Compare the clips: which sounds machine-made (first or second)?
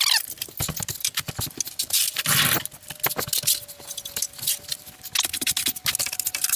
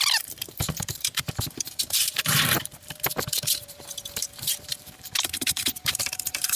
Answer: second